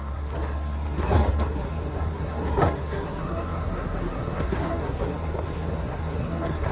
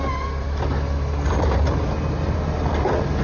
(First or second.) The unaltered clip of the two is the second